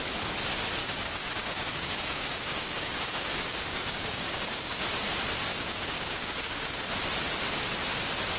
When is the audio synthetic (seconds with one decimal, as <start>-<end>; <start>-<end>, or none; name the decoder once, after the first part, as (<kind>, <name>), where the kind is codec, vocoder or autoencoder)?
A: 0.8-4.8 (codec, DAC); 5.5-6.9